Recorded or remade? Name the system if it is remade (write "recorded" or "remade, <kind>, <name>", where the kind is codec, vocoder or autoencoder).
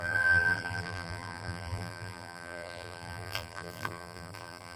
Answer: remade, vocoder, BigVGAN v2